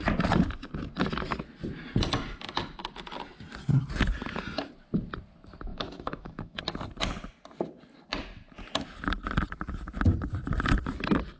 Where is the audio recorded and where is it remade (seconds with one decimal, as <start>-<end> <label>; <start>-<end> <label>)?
0.0-5.7 recorded; 5.7-6.6 remade; 6.6-11.4 recorded